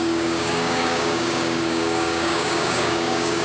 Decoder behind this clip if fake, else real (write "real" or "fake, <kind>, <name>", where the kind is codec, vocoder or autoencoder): fake, codec, DAC